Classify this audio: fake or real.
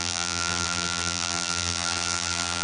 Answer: fake